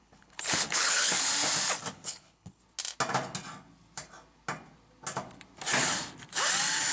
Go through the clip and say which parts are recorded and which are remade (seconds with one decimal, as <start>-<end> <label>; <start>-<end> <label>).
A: 0.0-1.3 remade; 1.3-1.9 recorded; 1.9-2.6 remade; 2.6-6.9 recorded